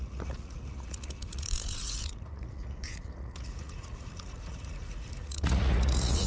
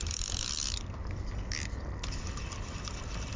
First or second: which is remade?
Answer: first